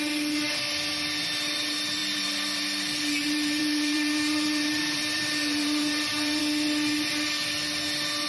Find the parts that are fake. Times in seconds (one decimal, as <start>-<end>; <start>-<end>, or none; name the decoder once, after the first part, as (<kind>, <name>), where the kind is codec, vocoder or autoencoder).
2.0-6.4 (vocoder, BigVGAN v2)